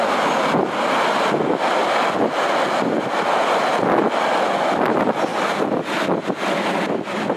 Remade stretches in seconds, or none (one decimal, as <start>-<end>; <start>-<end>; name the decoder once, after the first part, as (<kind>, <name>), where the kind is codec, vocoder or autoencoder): none